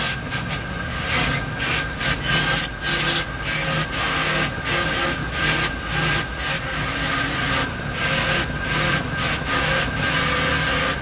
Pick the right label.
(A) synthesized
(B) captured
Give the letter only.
B